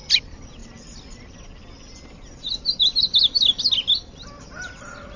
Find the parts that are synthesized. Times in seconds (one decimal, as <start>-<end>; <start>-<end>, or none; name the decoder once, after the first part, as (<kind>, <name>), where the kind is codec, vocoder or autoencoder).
none